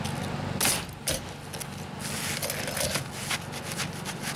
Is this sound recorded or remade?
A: recorded